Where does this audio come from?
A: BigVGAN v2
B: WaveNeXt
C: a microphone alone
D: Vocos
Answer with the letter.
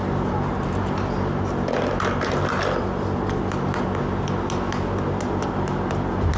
C